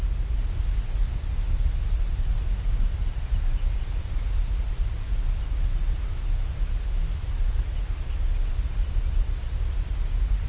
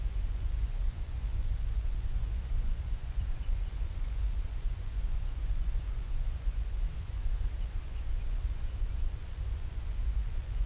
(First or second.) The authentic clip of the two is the first